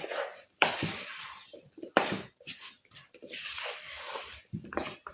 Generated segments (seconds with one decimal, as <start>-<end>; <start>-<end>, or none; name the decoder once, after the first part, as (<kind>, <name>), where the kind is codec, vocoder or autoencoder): 0.0-5.1 (vocoder, BigVGAN v2)